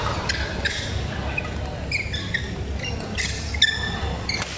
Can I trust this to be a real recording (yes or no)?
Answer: yes